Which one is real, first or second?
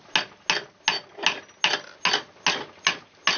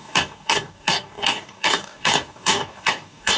first